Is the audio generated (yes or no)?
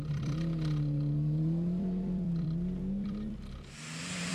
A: yes